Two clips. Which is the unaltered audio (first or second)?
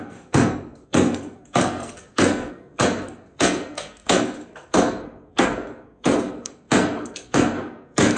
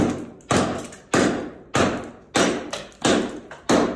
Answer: second